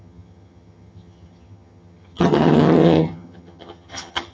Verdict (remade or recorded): remade